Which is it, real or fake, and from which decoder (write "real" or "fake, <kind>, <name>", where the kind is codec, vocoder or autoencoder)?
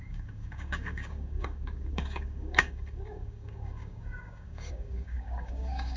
fake, codec, DAC